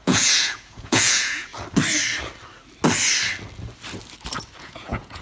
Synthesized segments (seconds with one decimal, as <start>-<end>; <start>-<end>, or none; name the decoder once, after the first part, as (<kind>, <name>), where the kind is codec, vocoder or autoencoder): 0.0-1.5 (vocoder, Vocos); 4.6-5.2